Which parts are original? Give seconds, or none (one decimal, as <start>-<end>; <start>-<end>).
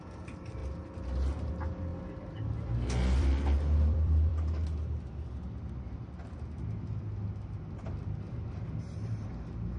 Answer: 0.6-1.5; 1.9-3.2; 4.3-5.4